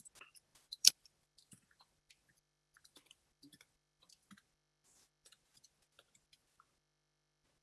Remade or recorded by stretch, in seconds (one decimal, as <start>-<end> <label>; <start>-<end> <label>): 0.0-0.5 recorded; 0.5-4.3 remade; 4.3-7.6 recorded